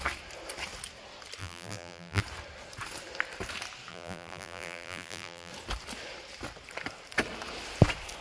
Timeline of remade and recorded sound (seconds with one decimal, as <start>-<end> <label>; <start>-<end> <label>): 0.0-1.4 recorded; 1.4-2.2 remade; 2.2-3.9 recorded; 3.9-5.5 remade; 5.5-8.2 recorded